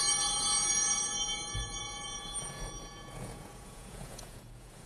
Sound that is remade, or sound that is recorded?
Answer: remade